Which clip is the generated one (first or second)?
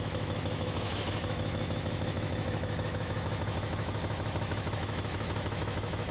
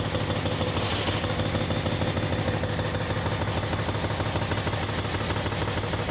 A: first